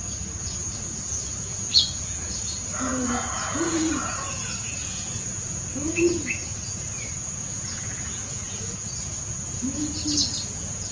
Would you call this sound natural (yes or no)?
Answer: no